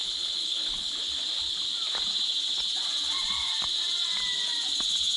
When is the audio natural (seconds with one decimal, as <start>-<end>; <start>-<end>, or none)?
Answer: 1.0-5.2